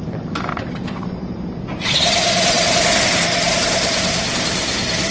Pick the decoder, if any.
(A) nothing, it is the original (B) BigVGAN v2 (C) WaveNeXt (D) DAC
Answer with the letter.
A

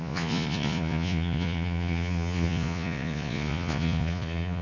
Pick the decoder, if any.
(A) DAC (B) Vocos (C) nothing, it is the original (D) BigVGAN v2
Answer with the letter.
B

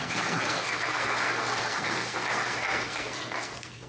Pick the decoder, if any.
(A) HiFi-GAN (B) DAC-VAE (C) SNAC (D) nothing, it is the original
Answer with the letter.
C